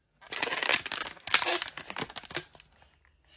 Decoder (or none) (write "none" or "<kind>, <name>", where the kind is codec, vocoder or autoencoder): none